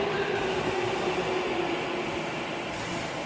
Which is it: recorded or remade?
recorded